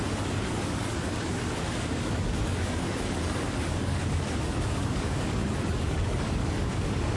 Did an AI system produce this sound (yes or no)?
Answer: yes